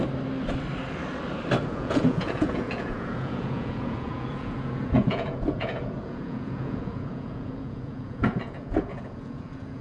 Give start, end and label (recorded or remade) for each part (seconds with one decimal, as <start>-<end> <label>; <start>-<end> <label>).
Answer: 0.0-1.7 recorded; 1.7-9.8 remade